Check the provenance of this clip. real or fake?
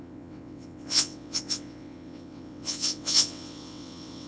fake